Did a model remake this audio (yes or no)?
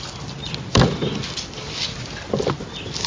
no